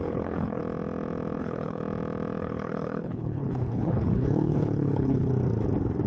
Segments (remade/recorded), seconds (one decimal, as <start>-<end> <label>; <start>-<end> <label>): 0.0-0.6 remade; 0.6-1.4 recorded; 1.4-1.8 remade; 1.8-2.4 recorded; 2.4-5.3 remade; 5.3-6.1 recorded